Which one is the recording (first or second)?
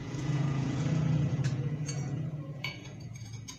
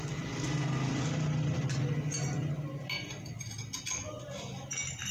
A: second